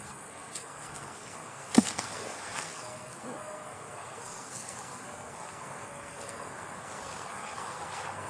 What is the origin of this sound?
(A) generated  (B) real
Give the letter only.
A